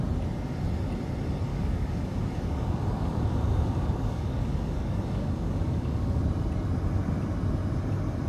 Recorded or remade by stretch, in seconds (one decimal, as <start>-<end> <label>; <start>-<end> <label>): 0.0-1.5 recorded; 1.5-6.2 remade; 6.2-8.3 recorded